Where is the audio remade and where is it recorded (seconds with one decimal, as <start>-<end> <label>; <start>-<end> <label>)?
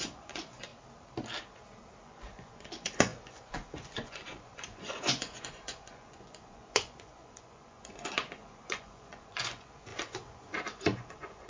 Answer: 0.0-0.7 remade; 0.7-2.0 recorded; 2.0-11.5 remade